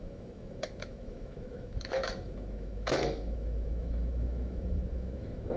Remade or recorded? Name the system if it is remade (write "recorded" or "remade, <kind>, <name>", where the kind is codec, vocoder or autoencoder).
remade, autoencoder, DAC-VAE